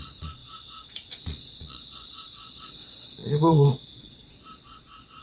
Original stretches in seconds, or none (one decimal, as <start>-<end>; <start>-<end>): none